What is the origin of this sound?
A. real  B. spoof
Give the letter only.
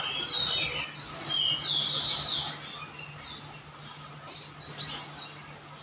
A